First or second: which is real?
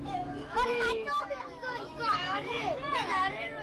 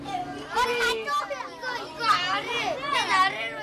second